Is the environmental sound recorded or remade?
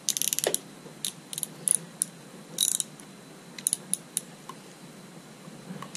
recorded